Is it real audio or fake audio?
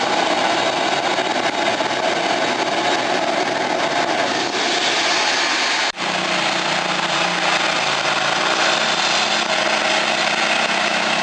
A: real